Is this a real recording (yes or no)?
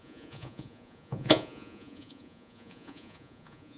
no